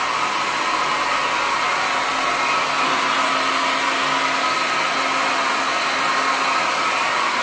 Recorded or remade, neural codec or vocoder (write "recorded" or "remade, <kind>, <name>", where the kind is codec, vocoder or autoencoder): recorded